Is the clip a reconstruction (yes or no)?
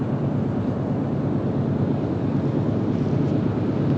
no